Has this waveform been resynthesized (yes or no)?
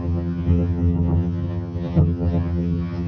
yes